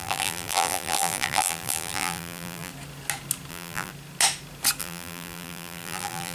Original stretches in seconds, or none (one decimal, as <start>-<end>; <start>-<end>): 2.7-3.5; 3.9-4.8